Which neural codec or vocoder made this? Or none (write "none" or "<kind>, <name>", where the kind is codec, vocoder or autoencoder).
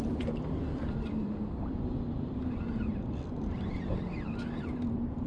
vocoder, BigVGAN v2